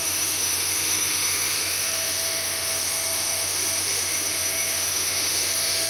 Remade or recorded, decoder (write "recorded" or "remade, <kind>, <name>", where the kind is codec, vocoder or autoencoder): remade, autoencoder, DAC-VAE